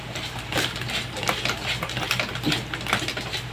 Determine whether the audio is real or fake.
real